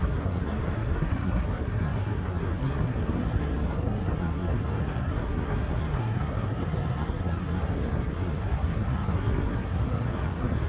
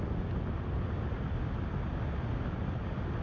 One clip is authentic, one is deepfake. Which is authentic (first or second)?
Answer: second